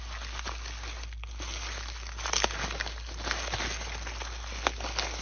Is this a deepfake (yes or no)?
no